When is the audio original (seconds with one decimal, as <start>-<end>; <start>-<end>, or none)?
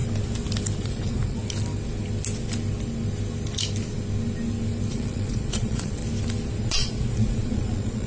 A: 0.0-0.8; 1.4-4.9; 6.0-6.6